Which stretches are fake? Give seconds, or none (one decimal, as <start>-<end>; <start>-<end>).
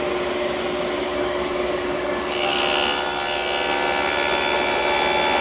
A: 1.1-2.6